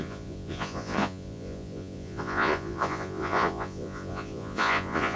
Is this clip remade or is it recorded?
remade